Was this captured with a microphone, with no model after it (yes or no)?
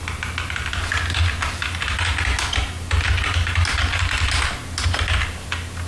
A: yes